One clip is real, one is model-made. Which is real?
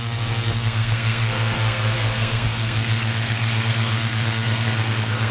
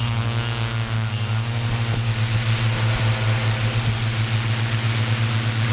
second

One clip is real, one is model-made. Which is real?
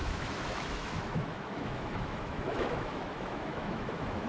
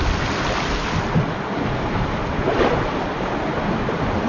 second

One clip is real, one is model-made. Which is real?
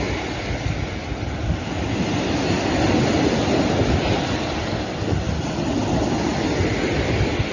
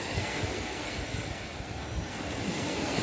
first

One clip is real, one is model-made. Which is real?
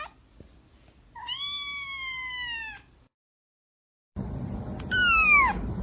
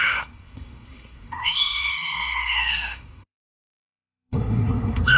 first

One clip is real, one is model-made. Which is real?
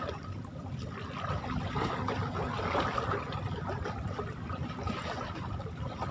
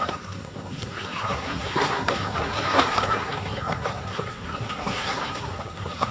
first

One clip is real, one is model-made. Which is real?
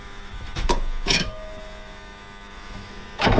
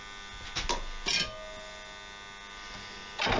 second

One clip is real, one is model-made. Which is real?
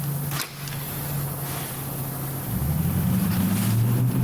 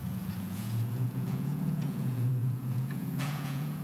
first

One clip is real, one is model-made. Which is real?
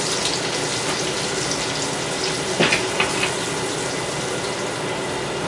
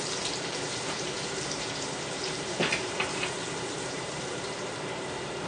first